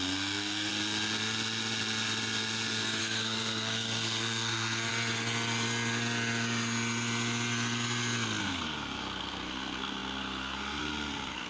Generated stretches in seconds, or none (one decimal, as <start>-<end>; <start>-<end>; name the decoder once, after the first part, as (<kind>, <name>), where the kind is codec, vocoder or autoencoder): 0.0-0.7 (codec, SNAC); 3.0-4.9; 8.4-11.5